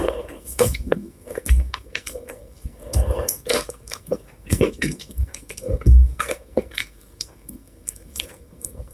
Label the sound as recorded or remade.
remade